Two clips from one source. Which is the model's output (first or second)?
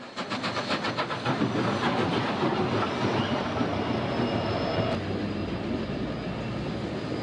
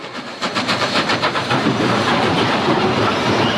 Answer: second